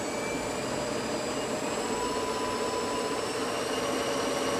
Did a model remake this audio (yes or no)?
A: no